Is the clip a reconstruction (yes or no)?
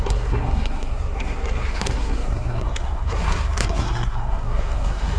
yes